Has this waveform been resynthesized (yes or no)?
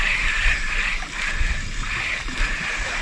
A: no